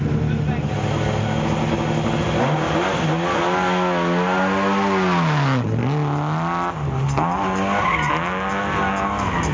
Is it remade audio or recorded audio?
recorded